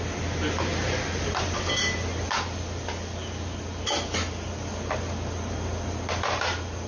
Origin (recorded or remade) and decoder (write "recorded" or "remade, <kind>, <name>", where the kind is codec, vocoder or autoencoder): recorded